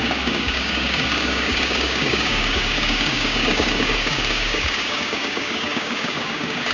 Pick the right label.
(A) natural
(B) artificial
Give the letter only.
B